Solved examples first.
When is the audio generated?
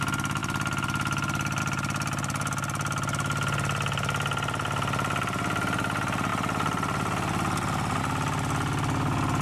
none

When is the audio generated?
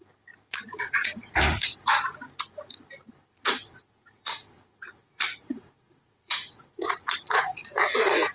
0.0-1.7 (vocoder, Vocos); 3.3-8.3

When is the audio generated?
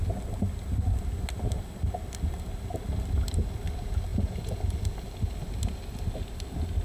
4.1-4.6 (vocoder, Vocos)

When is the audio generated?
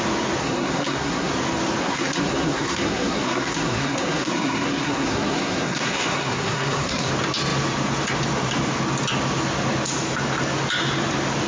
0.4-1.3 (codec, SNAC); 1.8-7.1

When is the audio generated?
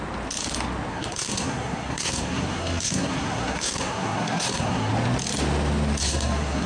0.9-4.9 (codec, SNAC); 6.0-6.7